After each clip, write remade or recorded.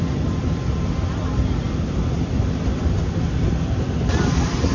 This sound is recorded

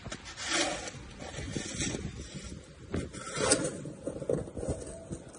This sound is recorded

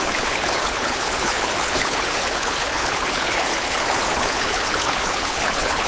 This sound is remade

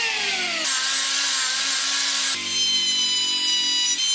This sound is recorded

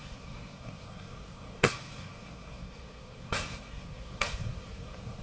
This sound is remade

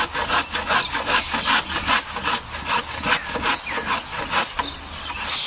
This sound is remade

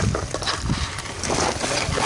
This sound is recorded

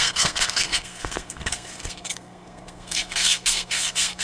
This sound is remade